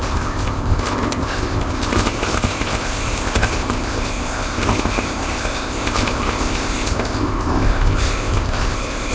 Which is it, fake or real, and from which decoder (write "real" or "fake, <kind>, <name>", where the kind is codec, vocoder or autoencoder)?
fake, codec, ZipCodec